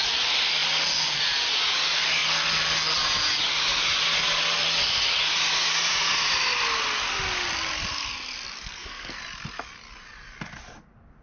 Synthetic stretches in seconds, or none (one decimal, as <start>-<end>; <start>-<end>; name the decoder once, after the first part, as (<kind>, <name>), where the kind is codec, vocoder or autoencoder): 8.6-9.2 (codec, SNAC)